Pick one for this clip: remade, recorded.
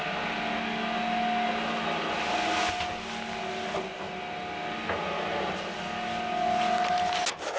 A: recorded